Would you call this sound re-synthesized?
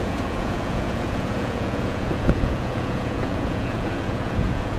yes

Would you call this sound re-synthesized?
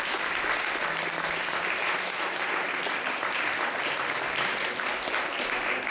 no